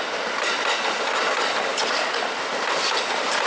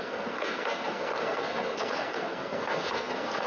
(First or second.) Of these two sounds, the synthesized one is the second